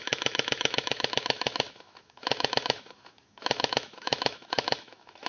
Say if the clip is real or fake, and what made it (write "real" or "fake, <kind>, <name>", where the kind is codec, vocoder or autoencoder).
fake, autoencoder, DAC-VAE